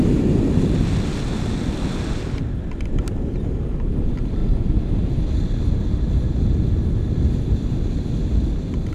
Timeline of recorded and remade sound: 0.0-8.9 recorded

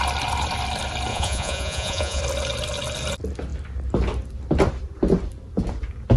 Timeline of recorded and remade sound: 0.0-1.1 recorded; 1.1-2.2 remade; 2.2-6.2 recorded